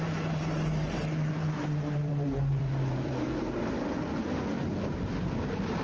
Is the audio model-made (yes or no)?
yes